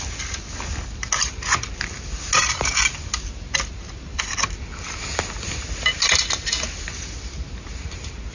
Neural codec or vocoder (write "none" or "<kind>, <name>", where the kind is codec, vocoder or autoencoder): none